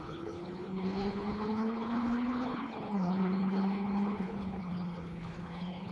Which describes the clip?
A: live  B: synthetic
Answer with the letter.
B